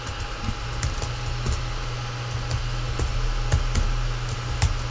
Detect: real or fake real